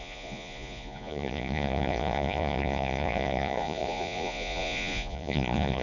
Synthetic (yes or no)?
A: yes